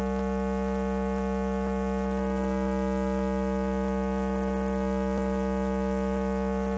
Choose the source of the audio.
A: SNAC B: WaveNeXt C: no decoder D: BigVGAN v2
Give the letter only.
C